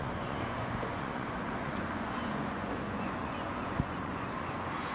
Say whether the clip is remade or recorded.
remade